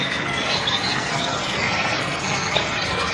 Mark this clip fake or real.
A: fake